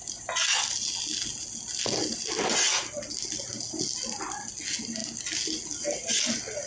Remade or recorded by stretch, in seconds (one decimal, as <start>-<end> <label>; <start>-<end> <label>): 0.0-6.7 recorded